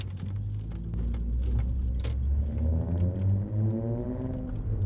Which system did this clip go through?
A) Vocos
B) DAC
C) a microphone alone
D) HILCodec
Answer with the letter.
C